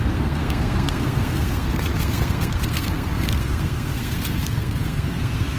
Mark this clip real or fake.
fake